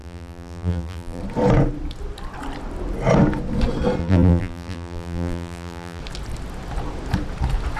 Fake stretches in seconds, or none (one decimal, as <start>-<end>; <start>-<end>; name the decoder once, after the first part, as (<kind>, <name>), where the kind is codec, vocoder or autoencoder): 0.0-1.2 (vocoder, BigVGAN v2); 4.0-6.0